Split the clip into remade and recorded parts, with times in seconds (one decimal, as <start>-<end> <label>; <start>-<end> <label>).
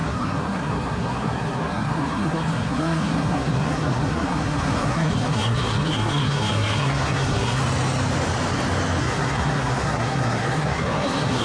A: 0.0-7.6 remade; 7.6-9.0 recorded; 9.0-11.4 remade